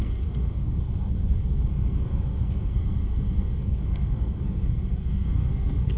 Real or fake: fake